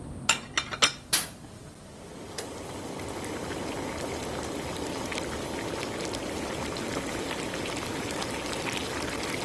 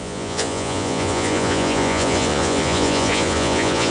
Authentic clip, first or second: first